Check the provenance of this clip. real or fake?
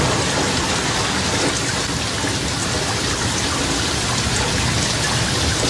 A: real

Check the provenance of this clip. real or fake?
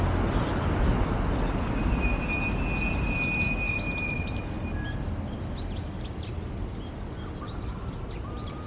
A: real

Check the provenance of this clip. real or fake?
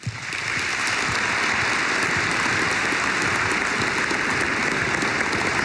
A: real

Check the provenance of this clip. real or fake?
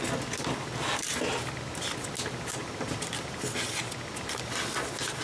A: real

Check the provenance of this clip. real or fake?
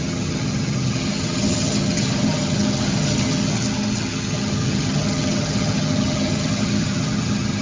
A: fake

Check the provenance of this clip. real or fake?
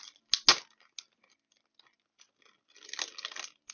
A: real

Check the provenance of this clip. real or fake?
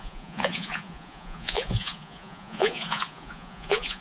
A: fake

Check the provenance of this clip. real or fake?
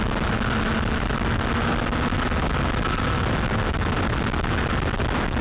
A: real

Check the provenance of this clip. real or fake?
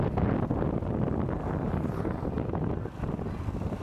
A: real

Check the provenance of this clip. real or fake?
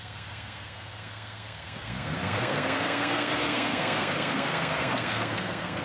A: fake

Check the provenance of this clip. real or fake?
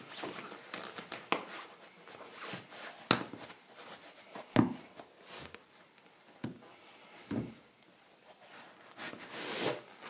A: real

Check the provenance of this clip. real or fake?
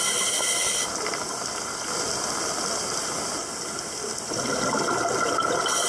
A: real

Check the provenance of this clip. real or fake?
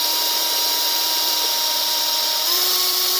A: fake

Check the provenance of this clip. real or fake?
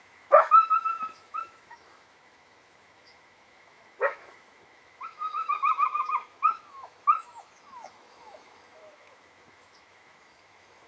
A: fake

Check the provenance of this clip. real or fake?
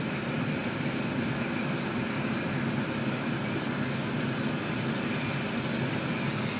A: real